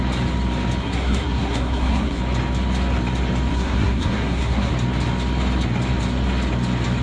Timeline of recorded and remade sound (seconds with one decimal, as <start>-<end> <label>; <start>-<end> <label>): 0.0-0.8 recorded; 0.8-2.2 remade; 2.2-3.5 recorded; 3.5-4.7 remade; 4.7-7.0 recorded